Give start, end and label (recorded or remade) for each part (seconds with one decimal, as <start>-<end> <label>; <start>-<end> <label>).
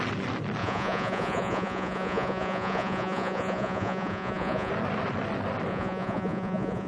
0.0-0.6 recorded; 0.6-4.7 remade; 4.7-5.7 recorded; 5.7-6.9 remade